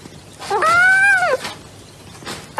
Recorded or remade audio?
recorded